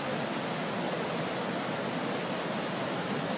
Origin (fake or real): real